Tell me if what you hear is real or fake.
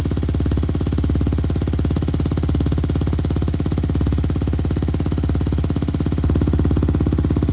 real